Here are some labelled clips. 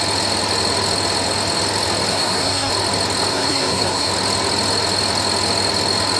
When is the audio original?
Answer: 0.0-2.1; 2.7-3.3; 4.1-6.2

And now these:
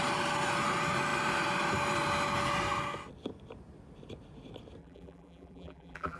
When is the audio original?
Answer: 0.0-4.8

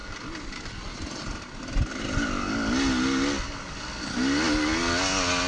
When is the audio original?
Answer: 0.0-5.5